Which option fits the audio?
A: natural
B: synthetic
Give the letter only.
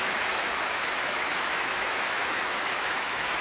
B